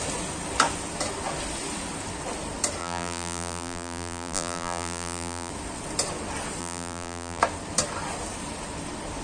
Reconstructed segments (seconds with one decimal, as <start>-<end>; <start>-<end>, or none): 2.8-5.5; 6.6-7.4